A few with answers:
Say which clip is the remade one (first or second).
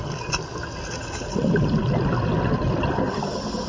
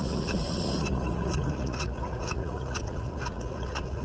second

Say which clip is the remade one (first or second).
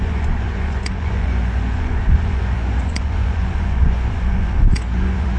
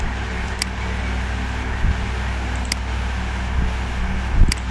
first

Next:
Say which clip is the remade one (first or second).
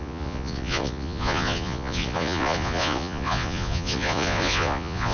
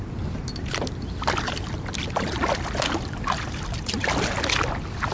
first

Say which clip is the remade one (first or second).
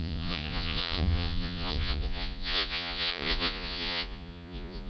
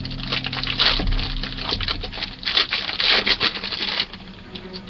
first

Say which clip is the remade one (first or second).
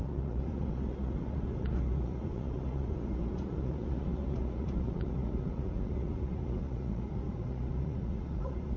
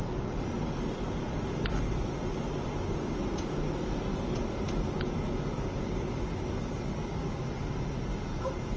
first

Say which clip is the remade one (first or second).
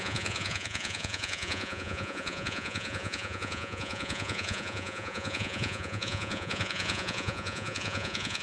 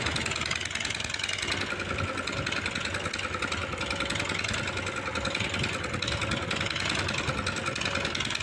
first